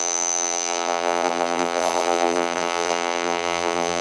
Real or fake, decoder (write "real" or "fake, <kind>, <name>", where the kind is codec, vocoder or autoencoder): fake, vocoder, BigVGAN v2